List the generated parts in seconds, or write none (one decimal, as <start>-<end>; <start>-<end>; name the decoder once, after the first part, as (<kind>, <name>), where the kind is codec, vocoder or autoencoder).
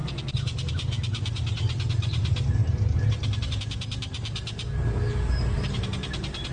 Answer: none